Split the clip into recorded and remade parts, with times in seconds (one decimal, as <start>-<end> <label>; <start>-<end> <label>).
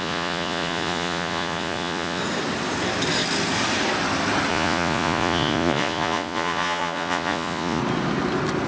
0.0-2.2 remade; 2.2-4.5 recorded; 4.5-7.8 remade; 7.8-8.7 recorded